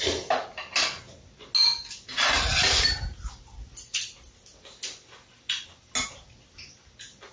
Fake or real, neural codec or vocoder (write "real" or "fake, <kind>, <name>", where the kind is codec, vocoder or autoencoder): real